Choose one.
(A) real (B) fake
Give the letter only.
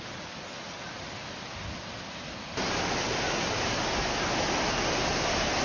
A